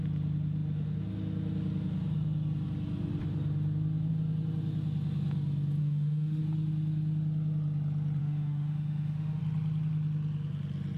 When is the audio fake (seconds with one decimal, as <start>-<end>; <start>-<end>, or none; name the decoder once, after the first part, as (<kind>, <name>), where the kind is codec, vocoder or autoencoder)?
5.8-6.4 (autoencoder, DAC-VAE); 8.2-9.4